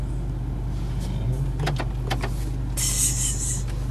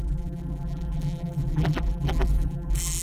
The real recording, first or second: first